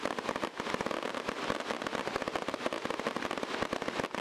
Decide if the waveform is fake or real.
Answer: real